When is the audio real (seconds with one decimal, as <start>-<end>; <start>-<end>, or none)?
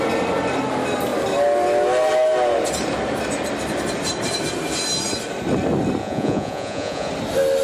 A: 0.0-6.0; 7.1-7.6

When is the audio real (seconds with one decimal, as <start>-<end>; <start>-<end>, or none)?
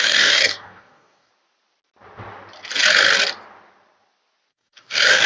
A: 1.3-4.5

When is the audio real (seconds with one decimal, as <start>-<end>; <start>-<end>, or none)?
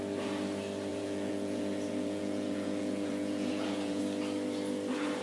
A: 0.0-0.9; 4.0-5.2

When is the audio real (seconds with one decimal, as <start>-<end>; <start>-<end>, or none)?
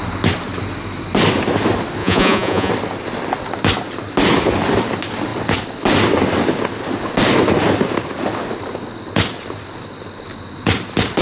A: 0.0-2.0; 2.7-11.2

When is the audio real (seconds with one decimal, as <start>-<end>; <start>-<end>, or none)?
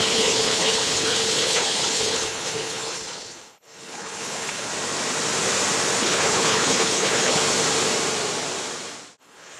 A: 4.7-6.0; 7.4-9.2